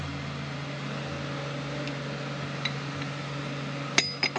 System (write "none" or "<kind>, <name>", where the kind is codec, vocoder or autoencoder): none